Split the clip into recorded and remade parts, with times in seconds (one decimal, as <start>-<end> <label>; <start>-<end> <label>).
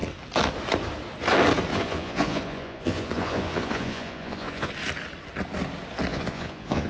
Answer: 0.0-1.7 recorded; 1.7-4.7 remade; 4.7-6.1 recorded; 6.1-6.9 remade